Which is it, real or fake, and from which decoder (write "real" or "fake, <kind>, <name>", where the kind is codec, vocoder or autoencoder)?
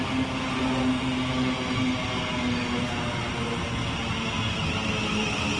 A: real